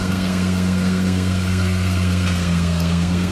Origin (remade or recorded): remade